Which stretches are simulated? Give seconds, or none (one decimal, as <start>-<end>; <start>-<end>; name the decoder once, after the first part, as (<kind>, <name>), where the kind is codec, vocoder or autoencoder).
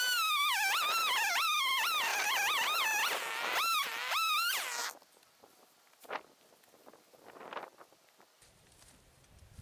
0.0-9.6 (vocoder, BigVGAN v2)